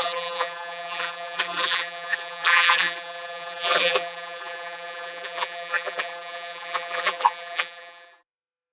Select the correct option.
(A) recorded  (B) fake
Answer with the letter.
B